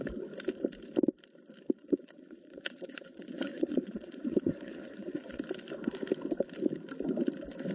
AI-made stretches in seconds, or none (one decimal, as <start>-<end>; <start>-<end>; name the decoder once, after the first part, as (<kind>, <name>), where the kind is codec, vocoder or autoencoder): 1.8-5.4 (vocoder, Vocos)